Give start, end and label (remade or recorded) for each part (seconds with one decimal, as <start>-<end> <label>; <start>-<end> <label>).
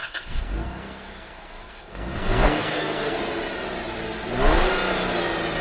0.0-3.2 remade; 3.2-5.6 recorded